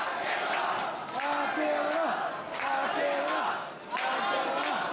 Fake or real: real